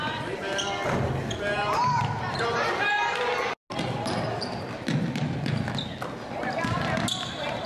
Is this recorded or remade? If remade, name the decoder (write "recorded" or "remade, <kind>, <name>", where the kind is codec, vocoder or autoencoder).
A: recorded